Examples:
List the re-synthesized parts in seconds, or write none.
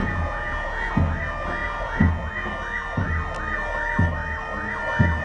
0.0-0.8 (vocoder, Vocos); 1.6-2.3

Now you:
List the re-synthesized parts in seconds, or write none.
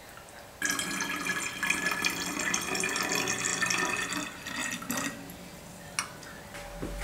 none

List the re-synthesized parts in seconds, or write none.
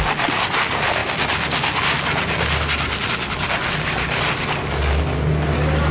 none